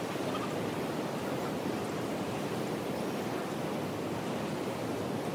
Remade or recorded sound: recorded